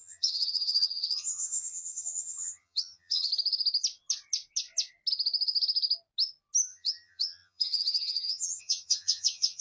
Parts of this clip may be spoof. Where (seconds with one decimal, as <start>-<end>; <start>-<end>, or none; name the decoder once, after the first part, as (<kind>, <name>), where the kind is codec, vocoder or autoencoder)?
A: 0.0-3.3 (vocoder, HiFi-GAN); 6.7-9.6